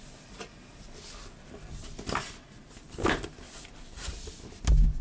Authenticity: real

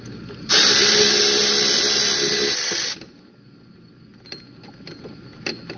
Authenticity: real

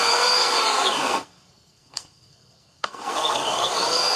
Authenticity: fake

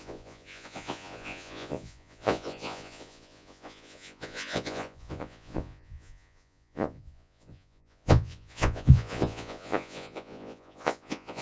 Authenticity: fake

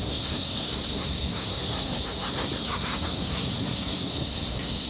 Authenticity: fake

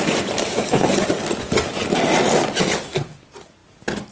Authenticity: real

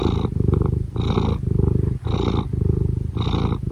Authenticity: real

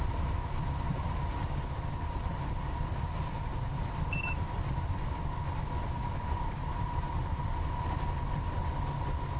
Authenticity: real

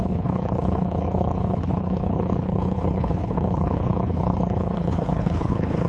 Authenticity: fake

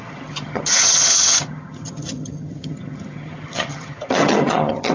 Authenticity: fake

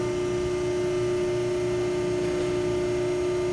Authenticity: real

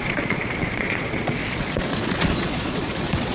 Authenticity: fake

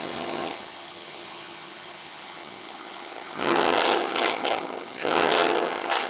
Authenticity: fake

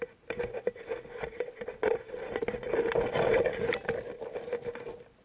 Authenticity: real